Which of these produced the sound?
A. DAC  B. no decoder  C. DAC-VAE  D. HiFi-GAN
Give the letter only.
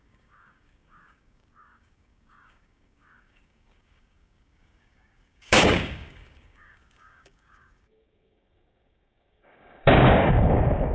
A